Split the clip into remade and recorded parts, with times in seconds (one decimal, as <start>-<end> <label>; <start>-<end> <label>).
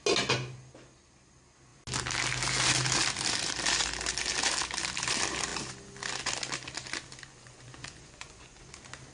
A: 0.0-7.3 recorded; 7.3-8.7 remade; 8.7-9.1 recorded